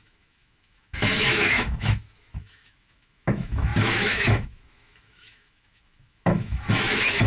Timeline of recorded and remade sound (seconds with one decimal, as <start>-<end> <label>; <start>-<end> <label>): 0.0-7.3 remade

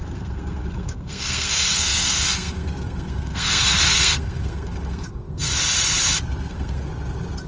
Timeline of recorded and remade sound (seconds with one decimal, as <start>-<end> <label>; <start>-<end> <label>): 0.0-5.5 remade; 5.5-6.5 recorded; 6.5-6.9 remade; 6.9-7.5 recorded

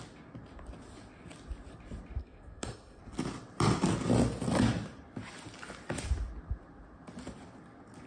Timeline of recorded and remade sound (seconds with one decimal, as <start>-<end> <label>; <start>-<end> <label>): 0.0-2.2 recorded; 2.2-3.0 remade; 3.0-8.1 recorded

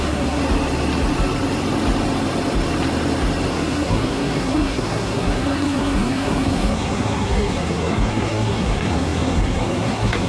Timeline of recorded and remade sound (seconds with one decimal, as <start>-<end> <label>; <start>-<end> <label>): 0.0-0.4 remade; 0.4-3.5 recorded; 3.5-10.3 remade